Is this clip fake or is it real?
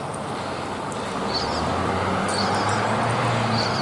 real